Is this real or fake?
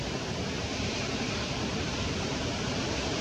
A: fake